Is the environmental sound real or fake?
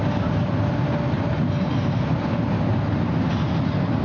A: real